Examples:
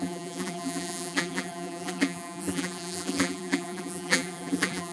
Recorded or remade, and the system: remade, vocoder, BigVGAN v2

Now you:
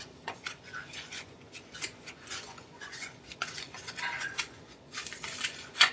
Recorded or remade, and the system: remade, vocoder, Vocos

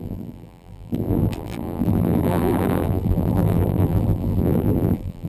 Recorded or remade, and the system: remade, vocoder, BigVGAN v2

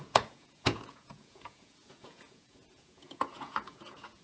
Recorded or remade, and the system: remade, vocoder, Vocos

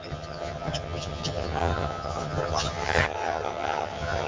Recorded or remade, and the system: remade, vocoder, HiFi-GAN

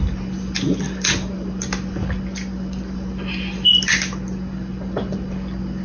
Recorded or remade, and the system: recorded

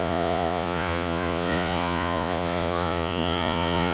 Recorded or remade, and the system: remade, vocoder, Vocos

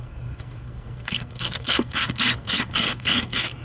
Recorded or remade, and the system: remade, codec, SNAC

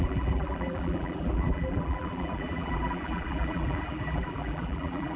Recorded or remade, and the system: remade, vocoder, BigVGAN v2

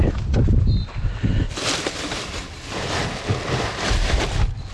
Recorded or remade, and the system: remade, vocoder, BigVGAN v2